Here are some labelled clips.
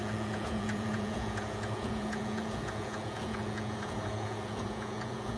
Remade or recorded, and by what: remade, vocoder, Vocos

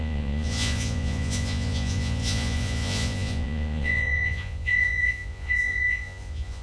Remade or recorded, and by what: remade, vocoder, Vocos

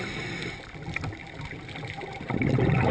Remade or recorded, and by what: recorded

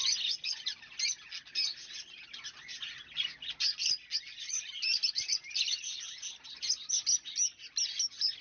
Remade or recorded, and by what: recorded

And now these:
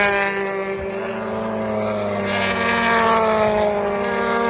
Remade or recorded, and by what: recorded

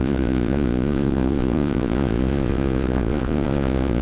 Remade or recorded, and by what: remade, vocoder, Vocos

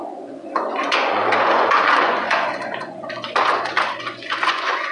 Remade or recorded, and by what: remade, vocoder, Vocos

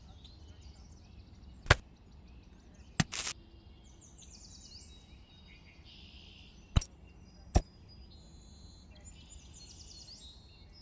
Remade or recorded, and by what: recorded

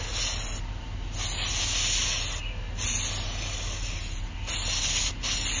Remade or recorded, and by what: recorded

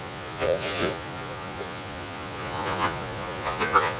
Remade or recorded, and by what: remade, vocoder, Vocos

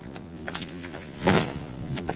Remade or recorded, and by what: remade, vocoder, Vocos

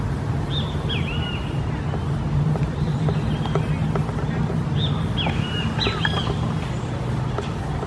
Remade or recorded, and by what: recorded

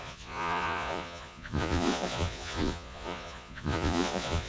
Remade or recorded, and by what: remade, vocoder, Vocos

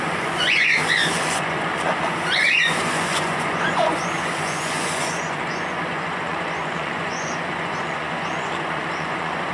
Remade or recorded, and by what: remade, vocoder, Vocos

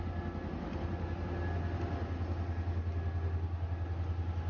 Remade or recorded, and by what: recorded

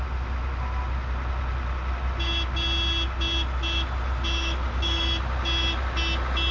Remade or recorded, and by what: recorded